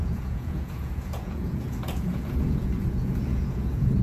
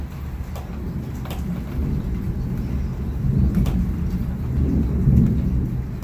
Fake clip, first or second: first